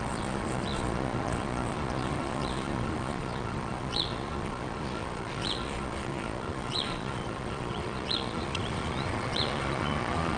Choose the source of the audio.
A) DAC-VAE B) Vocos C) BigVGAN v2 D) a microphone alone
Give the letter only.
B